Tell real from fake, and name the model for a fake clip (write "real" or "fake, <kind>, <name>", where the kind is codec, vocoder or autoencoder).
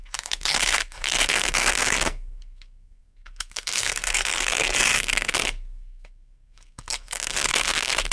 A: fake, codec, SNAC